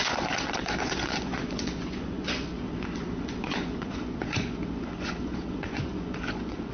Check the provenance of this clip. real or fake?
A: fake